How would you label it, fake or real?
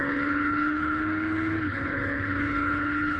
fake